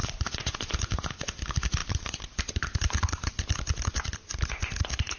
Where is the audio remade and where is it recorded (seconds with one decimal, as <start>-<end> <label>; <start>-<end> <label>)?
0.0-5.2 recorded